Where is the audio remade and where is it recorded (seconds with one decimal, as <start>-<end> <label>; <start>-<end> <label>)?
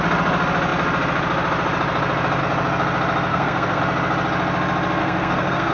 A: 0.0-3.3 recorded; 3.3-3.8 remade; 3.8-5.0 recorded; 5.0-5.7 remade